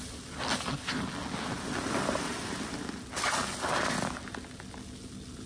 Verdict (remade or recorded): recorded